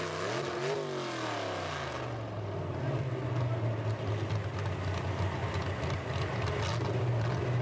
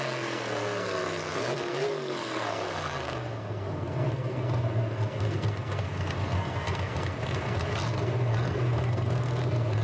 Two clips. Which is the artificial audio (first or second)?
second